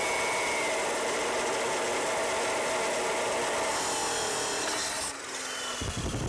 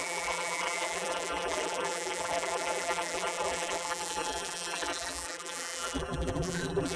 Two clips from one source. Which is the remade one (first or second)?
second